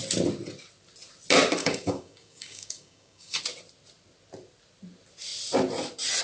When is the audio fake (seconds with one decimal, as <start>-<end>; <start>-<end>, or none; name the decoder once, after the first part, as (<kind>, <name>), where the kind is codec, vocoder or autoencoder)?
1.6-3.4 (codec, DAC)